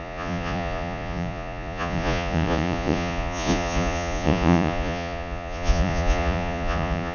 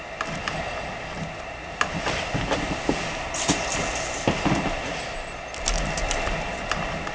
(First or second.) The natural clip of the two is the second